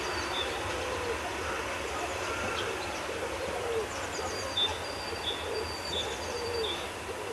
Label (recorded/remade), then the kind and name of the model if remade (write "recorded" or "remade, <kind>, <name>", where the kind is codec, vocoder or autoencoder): recorded